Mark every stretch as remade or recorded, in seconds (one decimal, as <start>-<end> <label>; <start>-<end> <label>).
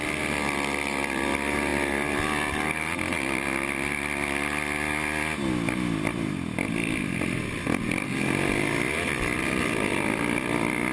0.0-10.9 recorded